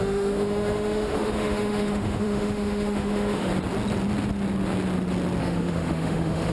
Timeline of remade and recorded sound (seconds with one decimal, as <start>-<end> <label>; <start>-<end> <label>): 0.0-3.5 remade; 3.5-5.4 recorded; 5.4-6.5 remade